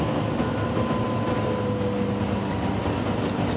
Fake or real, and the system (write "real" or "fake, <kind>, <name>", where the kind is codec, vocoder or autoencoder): real